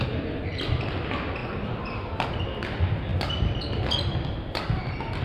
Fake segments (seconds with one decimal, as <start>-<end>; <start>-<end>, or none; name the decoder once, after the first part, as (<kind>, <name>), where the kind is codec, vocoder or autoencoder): none